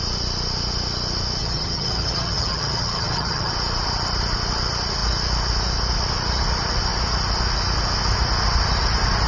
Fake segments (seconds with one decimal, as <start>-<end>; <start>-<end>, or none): 1.4-3.5